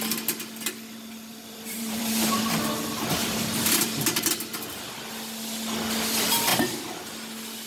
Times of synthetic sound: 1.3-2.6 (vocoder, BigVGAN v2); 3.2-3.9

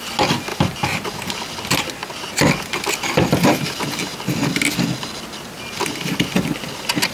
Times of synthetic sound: 0.5-1.3 (vocoder, BigVGAN v2)

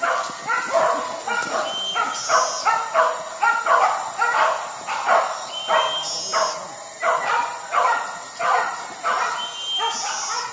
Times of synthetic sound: none

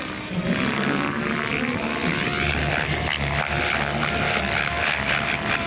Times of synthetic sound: none

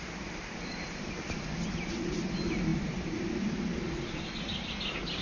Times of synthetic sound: 2.7-4.4 (vocoder, BigVGAN v2)

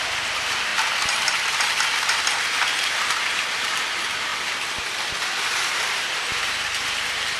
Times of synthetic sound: 0.0-0.7 (vocoder, BigVGAN v2); 2.7-4.3; 5.5-7.4

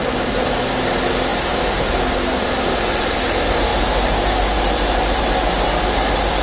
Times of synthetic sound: 3.7-5.2 (vocoder, BigVGAN v2)

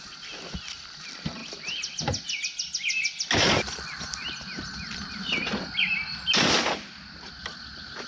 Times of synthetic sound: none